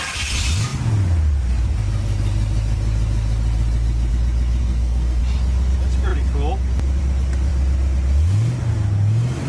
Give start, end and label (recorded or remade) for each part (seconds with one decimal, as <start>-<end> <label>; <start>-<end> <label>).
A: 0.0-4.6 recorded; 4.6-5.2 remade; 5.2-9.5 recorded